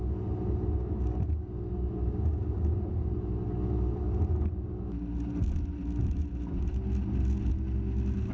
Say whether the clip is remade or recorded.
recorded